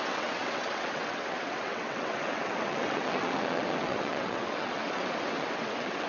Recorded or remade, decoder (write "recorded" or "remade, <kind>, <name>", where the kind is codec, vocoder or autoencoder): remade, vocoder, WaveNeXt